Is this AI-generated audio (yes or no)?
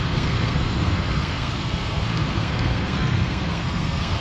yes